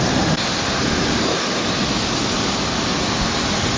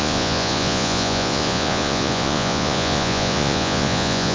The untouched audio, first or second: first